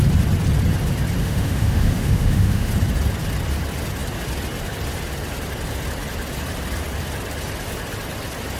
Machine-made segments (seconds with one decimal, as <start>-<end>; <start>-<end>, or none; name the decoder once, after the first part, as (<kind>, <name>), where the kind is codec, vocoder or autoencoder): 1.2-2.7 (autoencoder, DAC-VAE)